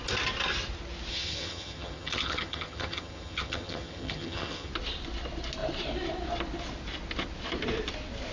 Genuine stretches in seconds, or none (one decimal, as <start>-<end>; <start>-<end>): 0.0-1.1; 4.7-8.3

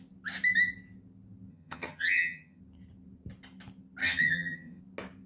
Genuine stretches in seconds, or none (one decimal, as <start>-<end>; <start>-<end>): 0.0-1.5; 2.6-4.0; 4.8-5.3

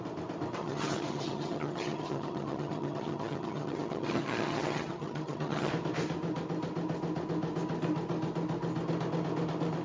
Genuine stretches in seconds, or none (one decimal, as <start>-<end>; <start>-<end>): 0.0-0.6; 5.7-9.8

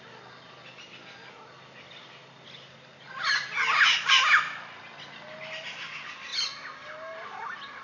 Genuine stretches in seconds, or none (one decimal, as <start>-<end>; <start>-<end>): 0.0-7.8